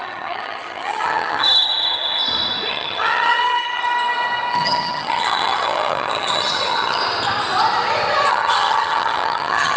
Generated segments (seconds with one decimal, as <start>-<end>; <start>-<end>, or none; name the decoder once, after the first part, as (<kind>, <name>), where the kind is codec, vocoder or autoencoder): 0.0-2.2 (vocoder, HiFi-GAN); 2.7-3.8; 4.5-7.0; 8.3-9.8